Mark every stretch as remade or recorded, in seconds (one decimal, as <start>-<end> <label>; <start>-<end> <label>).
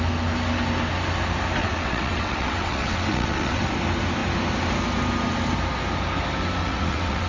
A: 0.0-1.6 recorded; 1.6-3.6 remade; 3.6-6.6 recorded; 6.6-7.3 remade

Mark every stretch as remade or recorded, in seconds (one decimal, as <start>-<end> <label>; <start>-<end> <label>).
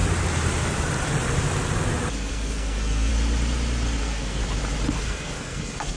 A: 0.0-2.3 recorded; 2.3-3.1 remade; 3.1-4.0 recorded; 4.0-4.4 remade; 4.4-5.0 recorded; 5.0-6.0 remade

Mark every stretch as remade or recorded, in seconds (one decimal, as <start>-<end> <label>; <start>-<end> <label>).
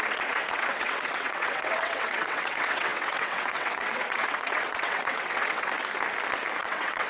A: 0.0-5.8 remade; 5.8-6.6 recorded; 6.6-7.1 remade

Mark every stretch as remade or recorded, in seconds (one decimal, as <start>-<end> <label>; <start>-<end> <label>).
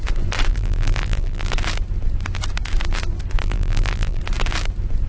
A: 0.0-0.5 recorded; 0.5-1.5 remade; 1.5-3.4 recorded; 3.4-4.2 remade; 4.2-5.1 recorded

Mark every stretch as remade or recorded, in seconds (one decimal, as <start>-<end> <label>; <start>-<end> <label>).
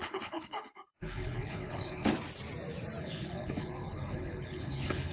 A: 0.0-2.1 remade; 2.1-3.0 recorded; 3.0-5.1 remade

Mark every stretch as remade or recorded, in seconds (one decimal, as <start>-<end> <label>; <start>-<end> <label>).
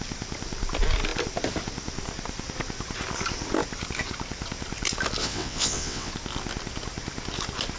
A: 0.0-5.2 recorded; 5.2-6.1 remade; 6.1-7.8 recorded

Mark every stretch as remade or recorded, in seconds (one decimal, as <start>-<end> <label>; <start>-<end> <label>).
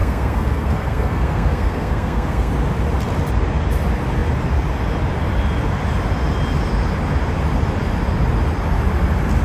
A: 0.0-2.5 remade; 2.5-9.4 recorded